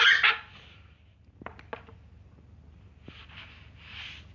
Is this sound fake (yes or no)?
no